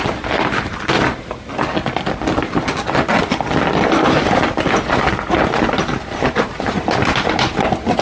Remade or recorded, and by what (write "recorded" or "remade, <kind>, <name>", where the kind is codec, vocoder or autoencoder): recorded